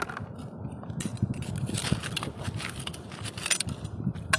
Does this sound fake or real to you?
real